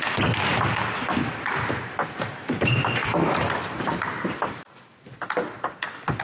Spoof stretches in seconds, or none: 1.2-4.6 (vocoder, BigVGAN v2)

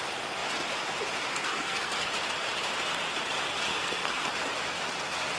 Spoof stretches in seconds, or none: 1.3-2.1 (codec, SNAC); 3.7-4.3

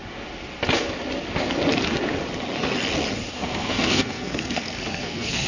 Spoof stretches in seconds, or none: 3.3-5.5 (codec, SNAC)

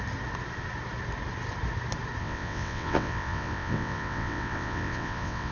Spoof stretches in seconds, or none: 2.2-5.5 (vocoder, WaveNeXt)

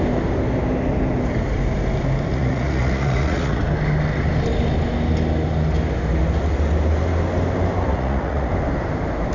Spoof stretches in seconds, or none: 2.3-3.6 (vocoder, Vocos); 7.9-8.5